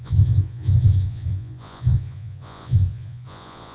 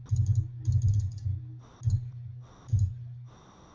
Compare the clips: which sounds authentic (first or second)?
second